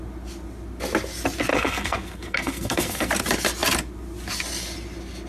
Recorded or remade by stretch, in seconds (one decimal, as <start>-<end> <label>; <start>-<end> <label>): 0.0-1.5 recorded; 1.5-3.1 remade; 3.1-5.3 recorded